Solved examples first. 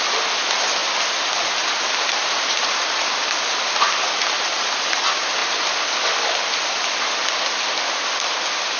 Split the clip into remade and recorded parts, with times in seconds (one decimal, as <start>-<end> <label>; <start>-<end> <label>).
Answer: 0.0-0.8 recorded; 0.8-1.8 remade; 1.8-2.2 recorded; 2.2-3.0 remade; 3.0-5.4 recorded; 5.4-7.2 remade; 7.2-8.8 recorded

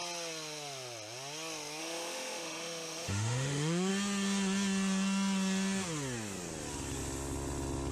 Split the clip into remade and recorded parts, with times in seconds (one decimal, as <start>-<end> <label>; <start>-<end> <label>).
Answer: 0.0-1.8 recorded; 1.8-3.9 remade; 3.9-7.9 recorded

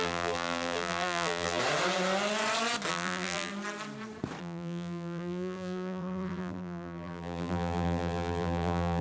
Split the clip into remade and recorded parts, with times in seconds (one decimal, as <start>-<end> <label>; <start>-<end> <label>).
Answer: 0.0-1.6 remade; 1.6-2.9 recorded; 2.9-3.5 remade; 3.5-4.4 recorded; 4.4-9.0 remade

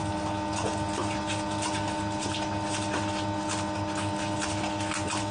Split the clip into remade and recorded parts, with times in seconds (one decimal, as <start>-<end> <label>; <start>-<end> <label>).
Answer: 0.0-5.3 recorded

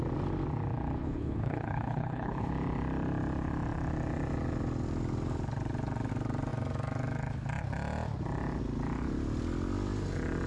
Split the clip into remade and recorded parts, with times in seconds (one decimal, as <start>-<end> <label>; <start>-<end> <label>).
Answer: 0.0-1.0 recorded; 1.0-2.5 remade; 2.5-10.5 recorded

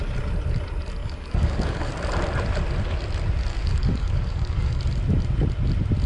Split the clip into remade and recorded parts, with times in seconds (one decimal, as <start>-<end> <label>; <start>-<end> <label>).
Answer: 0.0-1.0 recorded; 1.0-1.9 remade; 1.9-3.5 recorded; 3.5-4.8 remade; 4.8-6.1 recorded